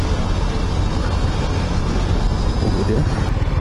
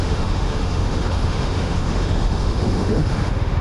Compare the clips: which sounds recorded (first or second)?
first